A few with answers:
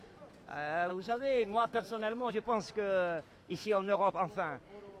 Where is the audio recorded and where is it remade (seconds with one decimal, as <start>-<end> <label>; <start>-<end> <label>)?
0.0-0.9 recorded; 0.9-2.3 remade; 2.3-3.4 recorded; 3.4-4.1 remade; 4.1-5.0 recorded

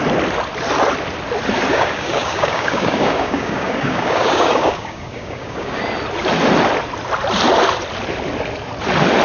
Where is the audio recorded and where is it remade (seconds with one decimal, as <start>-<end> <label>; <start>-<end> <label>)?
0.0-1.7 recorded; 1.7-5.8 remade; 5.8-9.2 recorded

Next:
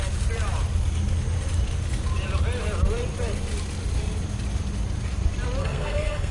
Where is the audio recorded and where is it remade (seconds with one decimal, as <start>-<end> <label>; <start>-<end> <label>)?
0.0-5.6 recorded; 5.6-6.3 remade

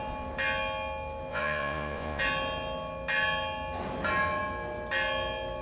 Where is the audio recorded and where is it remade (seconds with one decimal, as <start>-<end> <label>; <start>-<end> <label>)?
0.0-1.3 recorded; 1.3-2.2 remade; 2.2-5.6 recorded

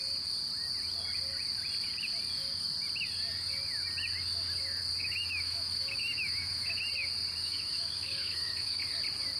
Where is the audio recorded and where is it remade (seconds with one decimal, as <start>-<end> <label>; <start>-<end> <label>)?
0.0-5.0 recorded; 5.0-6.8 remade; 6.8-7.4 recorded; 7.4-8.8 remade; 8.8-9.4 recorded

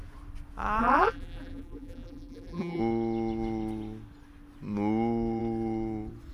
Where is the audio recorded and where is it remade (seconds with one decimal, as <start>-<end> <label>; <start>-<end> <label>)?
0.0-0.8 recorded; 0.8-2.8 remade; 2.8-6.3 recorded

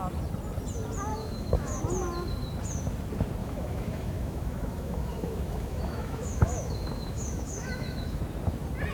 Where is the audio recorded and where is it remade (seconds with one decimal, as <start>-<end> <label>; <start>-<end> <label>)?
0.0-1.1 recorded; 1.1-1.8 remade; 1.8-3.4 recorded; 3.4-8.2 remade; 8.2-8.9 recorded

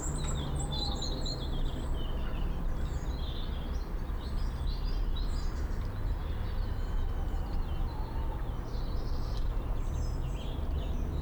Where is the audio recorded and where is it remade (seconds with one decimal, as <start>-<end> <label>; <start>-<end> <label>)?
0.0-11.2 recorded